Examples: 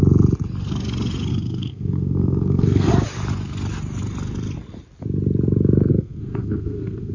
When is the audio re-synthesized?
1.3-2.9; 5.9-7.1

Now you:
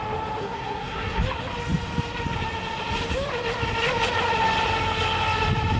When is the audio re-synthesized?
0.4-1.2

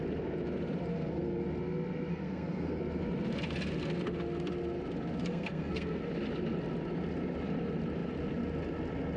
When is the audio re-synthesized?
0.9-1.4; 2.1-2.8; 5.3-6.0